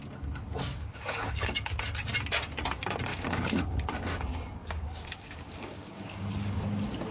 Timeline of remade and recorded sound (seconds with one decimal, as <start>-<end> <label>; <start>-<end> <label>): 0.0-0.7 recorded; 0.7-1.7 remade; 1.7-3.1 recorded; 3.1-6.6 remade; 6.6-7.1 recorded